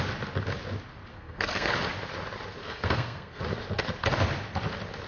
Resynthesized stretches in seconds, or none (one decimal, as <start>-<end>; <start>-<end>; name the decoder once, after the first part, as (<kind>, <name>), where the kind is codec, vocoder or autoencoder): 1.1-1.7 (codec, SNAC); 2.6-3.4